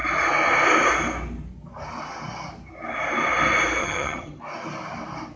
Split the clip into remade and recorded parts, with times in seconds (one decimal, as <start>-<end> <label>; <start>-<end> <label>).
0.0-3.8 recorded; 3.8-4.4 remade; 4.4-5.4 recorded